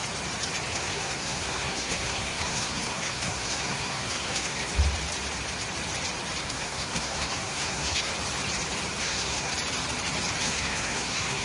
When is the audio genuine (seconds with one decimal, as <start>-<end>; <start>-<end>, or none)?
0.0-0.7; 4.7-6.4; 8.1-9.0; 9.5-10.4